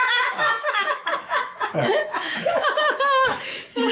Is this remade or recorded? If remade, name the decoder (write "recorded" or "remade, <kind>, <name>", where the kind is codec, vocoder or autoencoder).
remade, autoencoder, DAC-VAE